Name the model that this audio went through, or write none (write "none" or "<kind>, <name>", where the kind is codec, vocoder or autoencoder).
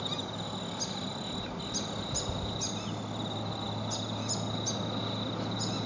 none